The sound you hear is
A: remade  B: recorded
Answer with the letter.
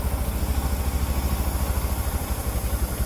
B